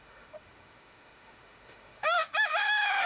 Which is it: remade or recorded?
remade